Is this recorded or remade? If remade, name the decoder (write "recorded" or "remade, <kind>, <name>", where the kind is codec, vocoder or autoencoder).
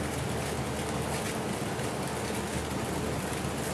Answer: recorded